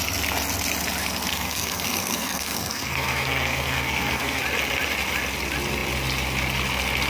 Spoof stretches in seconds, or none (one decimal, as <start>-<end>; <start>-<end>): 1.3-4.4